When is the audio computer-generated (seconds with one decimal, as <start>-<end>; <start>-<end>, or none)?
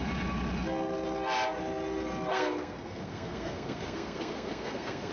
2.3-5.1